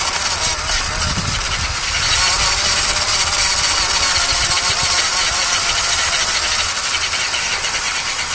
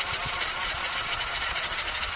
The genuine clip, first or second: first